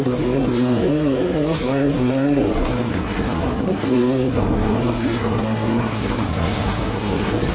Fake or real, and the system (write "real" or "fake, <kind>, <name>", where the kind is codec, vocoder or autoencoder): fake, codec, SNAC